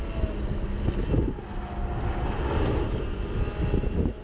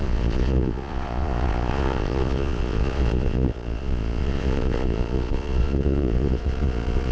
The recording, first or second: first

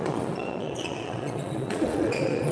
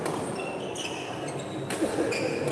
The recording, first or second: second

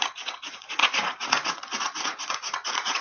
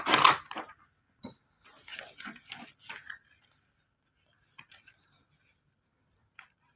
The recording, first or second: second